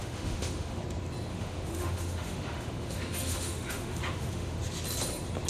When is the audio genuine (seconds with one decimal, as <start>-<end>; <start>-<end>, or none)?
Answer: 0.8-1.3; 4.6-5.5